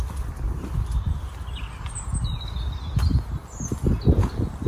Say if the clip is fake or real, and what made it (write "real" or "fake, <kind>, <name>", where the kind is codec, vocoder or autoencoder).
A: real